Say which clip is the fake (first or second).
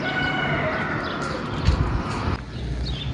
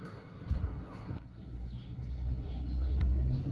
second